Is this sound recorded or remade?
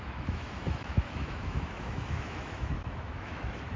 remade